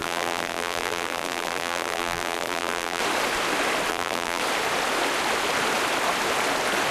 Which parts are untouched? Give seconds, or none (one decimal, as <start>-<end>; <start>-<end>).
3.0-3.9; 4.4-6.9